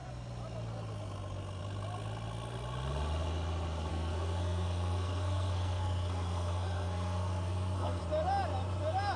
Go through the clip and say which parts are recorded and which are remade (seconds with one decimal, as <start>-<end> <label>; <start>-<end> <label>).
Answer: 0.0-3.9 recorded; 3.9-8.0 remade; 8.0-9.2 recorded